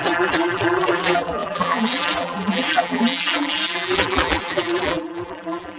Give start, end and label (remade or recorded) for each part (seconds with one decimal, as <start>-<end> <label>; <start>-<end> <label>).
0.0-5.8 remade